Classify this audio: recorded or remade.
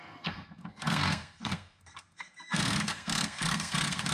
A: remade